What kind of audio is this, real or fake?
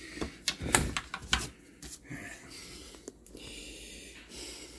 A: real